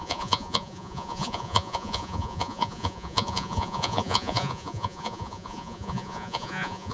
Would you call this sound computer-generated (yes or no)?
yes